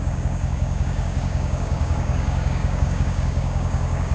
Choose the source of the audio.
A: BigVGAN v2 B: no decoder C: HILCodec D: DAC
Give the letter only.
D